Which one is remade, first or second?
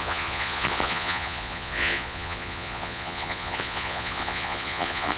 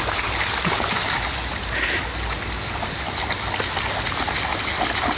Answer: first